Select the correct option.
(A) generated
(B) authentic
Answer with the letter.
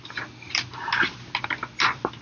B